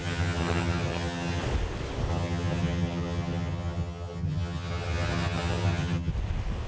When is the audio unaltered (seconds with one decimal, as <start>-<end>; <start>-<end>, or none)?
1.4-2.1; 6.1-6.7

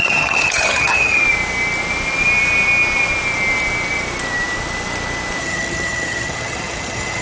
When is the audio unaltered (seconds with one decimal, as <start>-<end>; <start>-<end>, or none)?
1.2-5.4

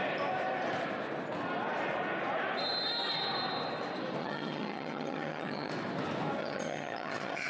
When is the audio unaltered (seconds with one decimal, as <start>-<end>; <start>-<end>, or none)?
0.0-4.2; 5.7-6.4

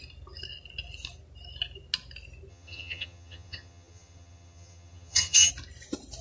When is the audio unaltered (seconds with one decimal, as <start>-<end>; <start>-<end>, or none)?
0.0-2.5; 5.5-6.2

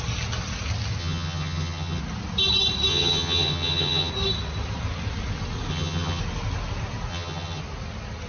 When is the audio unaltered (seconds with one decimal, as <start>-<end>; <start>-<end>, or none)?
0.0-1.0; 2.0-2.9; 4.1-5.7; 6.2-7.1; 7.6-8.3

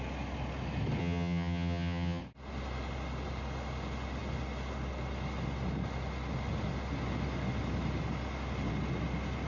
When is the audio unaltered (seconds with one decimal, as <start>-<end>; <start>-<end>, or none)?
0.0-1.0; 2.2-9.5

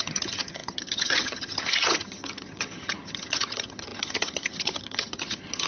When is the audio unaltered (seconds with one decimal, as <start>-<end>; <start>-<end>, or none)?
none